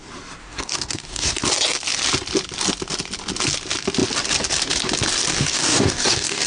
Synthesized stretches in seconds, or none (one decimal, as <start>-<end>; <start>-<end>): 0.4-1.3; 5.3-6.5